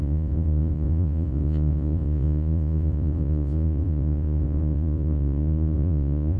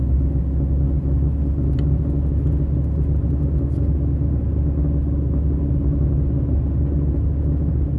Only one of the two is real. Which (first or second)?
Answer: second